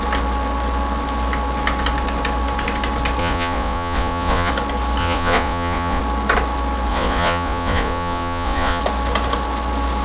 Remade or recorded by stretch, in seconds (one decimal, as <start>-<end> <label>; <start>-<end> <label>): 0.0-3.2 recorded; 3.2-4.5 remade; 4.5-5.0 recorded; 5.0-6.0 remade; 6.0-6.9 recorded; 6.9-8.8 remade; 8.8-10.0 recorded